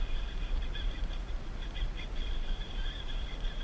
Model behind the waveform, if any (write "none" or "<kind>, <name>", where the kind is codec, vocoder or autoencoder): none